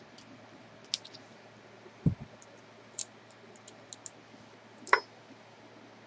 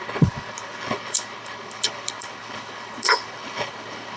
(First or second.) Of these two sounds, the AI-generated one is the second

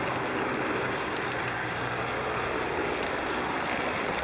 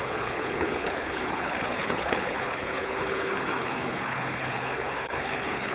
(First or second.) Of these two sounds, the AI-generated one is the second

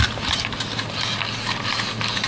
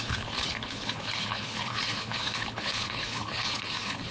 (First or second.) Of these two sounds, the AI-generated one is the second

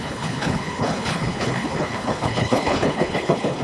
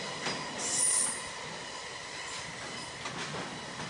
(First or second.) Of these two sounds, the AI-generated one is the first